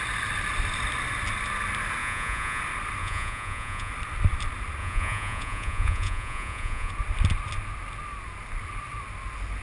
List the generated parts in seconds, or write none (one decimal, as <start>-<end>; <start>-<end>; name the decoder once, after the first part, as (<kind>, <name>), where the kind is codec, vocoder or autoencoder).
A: 2.0-2.6 (vocoder, Vocos); 3.0-3.9; 4.8-6.9